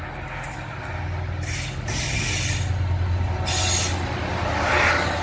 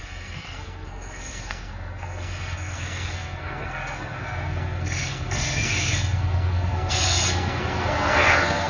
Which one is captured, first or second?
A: first